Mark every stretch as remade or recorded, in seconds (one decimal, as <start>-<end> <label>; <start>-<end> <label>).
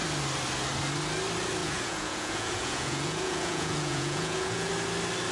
0.0-1.6 recorded; 1.6-4.7 remade; 4.7-5.3 recorded